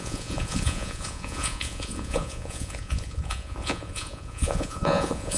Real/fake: fake